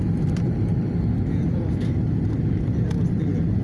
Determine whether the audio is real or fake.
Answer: real